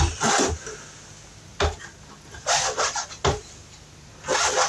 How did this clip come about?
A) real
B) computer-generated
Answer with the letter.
A